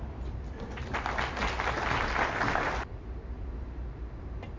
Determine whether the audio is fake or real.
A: real